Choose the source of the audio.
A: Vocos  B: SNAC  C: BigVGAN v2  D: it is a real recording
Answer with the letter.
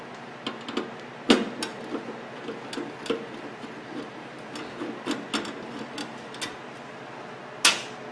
D